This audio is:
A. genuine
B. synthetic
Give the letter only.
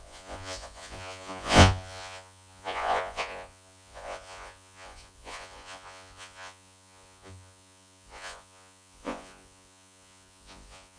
B